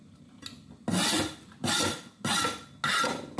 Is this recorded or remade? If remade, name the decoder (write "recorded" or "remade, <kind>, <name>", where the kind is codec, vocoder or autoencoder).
recorded